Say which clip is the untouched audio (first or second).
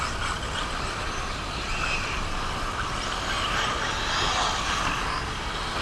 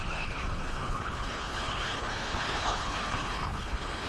first